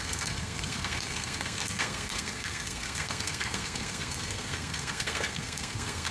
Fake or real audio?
fake